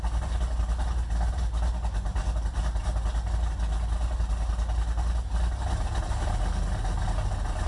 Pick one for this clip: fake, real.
real